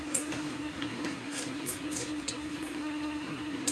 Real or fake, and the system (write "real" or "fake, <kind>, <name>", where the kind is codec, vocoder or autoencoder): fake, codec, SNAC